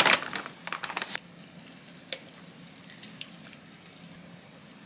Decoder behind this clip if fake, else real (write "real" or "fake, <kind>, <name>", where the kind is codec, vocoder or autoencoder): real